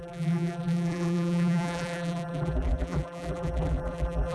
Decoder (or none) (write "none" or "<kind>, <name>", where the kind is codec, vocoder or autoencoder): vocoder, BigVGAN v2